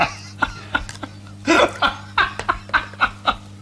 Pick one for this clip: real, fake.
real